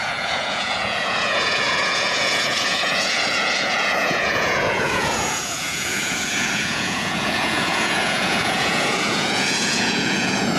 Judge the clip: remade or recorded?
remade